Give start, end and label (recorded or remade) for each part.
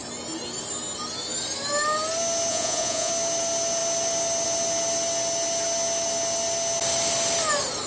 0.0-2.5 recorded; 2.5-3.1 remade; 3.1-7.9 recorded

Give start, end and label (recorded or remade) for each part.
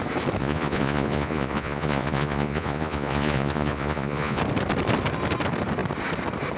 0.0-0.4 recorded; 0.4-4.4 remade; 4.4-6.6 recorded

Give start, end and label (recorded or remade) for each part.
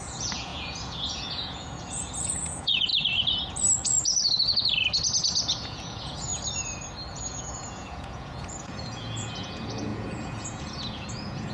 0.0-2.9 remade; 2.9-5.6 recorded; 5.6-6.3 remade; 6.3-7.1 recorded; 7.1-11.5 remade